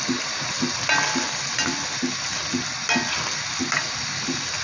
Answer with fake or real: real